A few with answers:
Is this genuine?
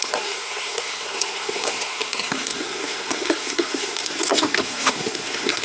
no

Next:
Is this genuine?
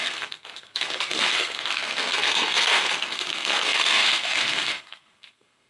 no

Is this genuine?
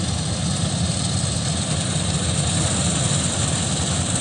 yes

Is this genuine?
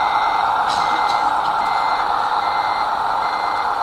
yes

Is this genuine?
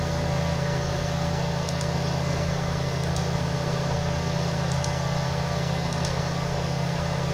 no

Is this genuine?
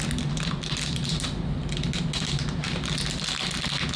yes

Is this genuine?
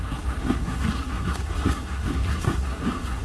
no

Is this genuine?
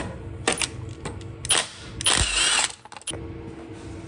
yes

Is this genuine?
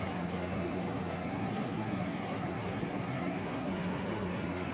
no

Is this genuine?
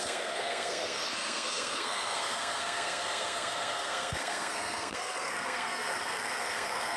no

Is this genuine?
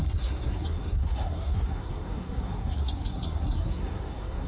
no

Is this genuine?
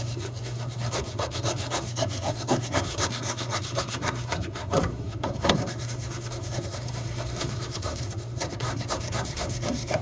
no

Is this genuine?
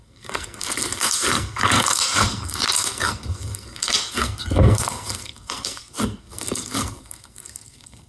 no